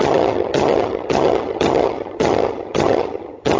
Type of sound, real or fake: fake